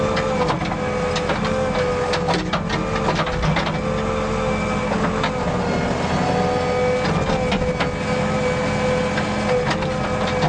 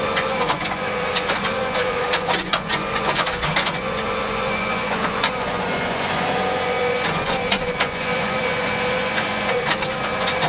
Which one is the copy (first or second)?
second